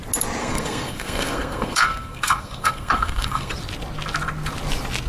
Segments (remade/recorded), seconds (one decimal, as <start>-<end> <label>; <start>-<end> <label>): 0.0-0.4 recorded; 0.4-3.5 remade; 3.5-5.1 recorded

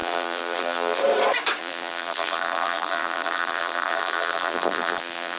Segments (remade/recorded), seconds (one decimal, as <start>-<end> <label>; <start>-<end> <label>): 0.0-1.0 remade; 1.0-1.6 recorded; 1.6-5.4 remade

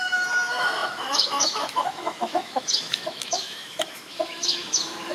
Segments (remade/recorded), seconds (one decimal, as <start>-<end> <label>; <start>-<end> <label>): 0.0-5.1 remade

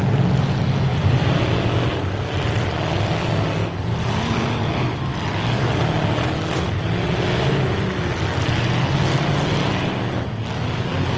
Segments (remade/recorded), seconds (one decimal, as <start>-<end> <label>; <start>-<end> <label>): 0.0-0.9 recorded; 0.9-1.5 remade; 1.5-1.9 recorded; 1.9-2.7 remade; 2.7-11.2 recorded

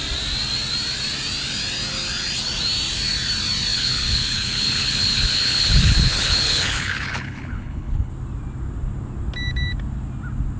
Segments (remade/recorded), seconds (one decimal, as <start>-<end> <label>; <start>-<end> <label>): 0.0-3.7 recorded; 3.7-8.1 remade; 8.1-10.6 recorded